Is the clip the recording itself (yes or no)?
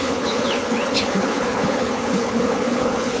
no